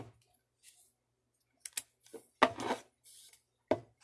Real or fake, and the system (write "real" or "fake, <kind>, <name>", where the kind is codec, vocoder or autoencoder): real